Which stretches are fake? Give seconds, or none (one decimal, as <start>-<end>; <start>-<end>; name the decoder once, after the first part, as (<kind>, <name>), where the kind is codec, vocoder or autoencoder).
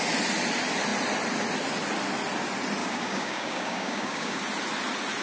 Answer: 2.8-4.4 (codec, DAC)